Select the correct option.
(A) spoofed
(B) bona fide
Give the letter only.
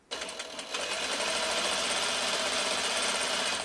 B